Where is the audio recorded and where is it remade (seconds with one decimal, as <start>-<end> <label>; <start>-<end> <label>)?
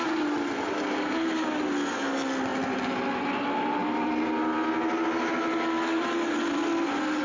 0.0-7.2 recorded